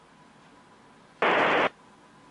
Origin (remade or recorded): recorded